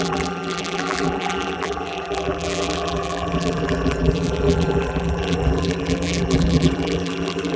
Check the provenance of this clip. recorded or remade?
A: remade